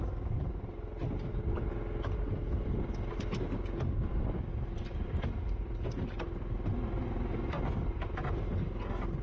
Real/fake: real